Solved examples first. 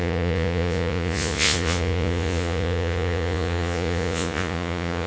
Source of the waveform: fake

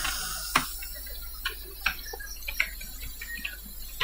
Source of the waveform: real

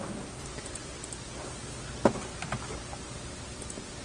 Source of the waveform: real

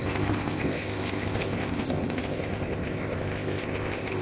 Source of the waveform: fake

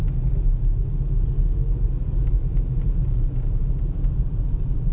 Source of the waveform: real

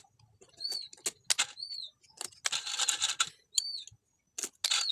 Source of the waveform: real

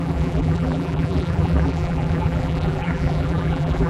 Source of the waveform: fake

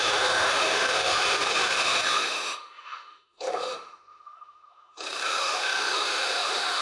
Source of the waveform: fake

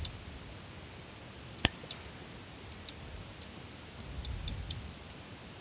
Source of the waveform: real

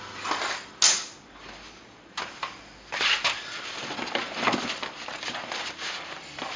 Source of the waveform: real